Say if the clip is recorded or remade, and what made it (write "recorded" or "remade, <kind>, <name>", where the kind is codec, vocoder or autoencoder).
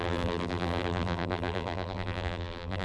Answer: remade, vocoder, BigVGAN v2